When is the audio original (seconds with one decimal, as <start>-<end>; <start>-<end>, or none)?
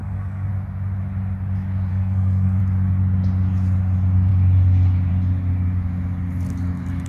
0.5-1.9; 2.6-7.1